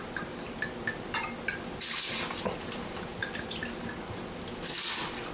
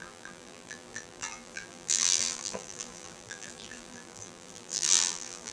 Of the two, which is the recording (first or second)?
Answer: first